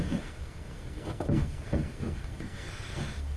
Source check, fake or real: fake